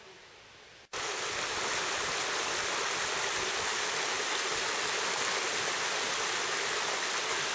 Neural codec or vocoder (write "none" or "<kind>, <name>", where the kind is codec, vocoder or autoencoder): none